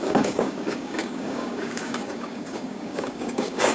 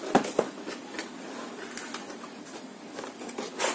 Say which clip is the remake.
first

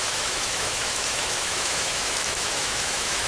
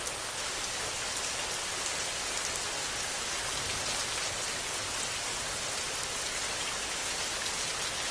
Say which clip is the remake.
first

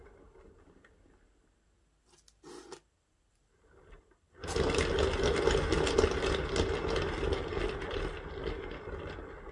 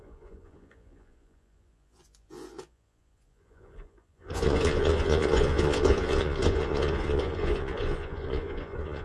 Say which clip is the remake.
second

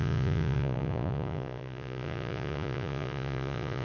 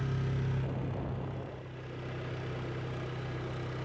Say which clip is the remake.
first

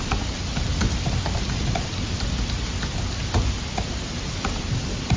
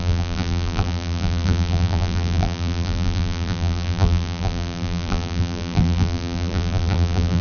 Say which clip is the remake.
second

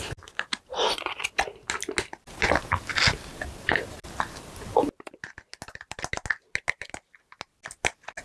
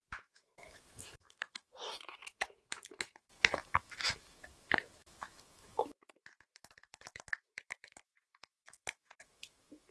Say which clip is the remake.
second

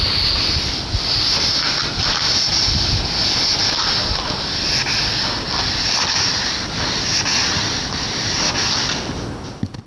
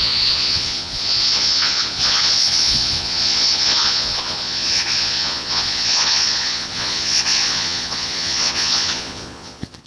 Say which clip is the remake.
second